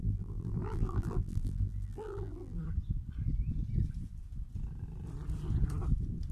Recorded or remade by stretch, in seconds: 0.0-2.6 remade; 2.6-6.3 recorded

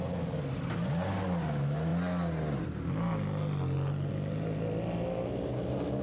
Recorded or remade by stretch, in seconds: 0.0-6.0 recorded

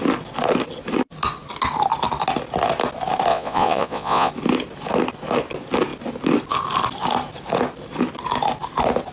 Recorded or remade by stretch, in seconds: 0.0-3.3 recorded; 3.3-4.3 remade; 4.3-9.1 recorded